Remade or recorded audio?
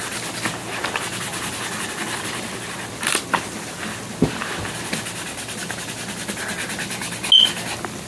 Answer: recorded